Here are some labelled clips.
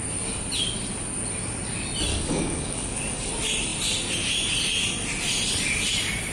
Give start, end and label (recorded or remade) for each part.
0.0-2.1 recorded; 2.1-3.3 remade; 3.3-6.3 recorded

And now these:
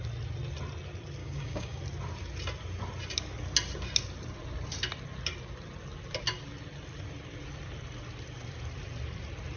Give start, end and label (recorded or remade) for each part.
0.0-1.2 recorded; 1.2-1.8 remade; 1.8-9.6 recorded